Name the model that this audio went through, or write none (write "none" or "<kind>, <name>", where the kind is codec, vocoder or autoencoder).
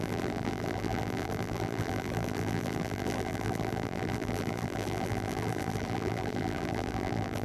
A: vocoder, BigVGAN v2